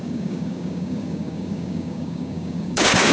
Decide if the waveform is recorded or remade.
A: remade